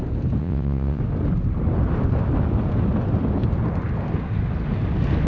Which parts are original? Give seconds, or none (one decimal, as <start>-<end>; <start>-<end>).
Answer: 0.0-0.4; 1.0-5.3